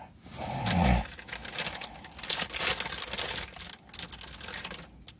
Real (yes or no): yes